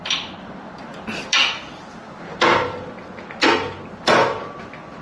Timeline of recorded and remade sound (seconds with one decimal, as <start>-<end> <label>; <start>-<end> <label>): 0.0-0.9 recorded; 0.9-1.8 remade; 1.8-5.0 recorded